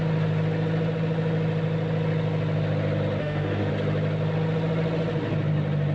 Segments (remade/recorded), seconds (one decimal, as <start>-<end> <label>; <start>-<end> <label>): 0.0-3.2 recorded; 3.2-3.7 remade; 3.7-5.9 recorded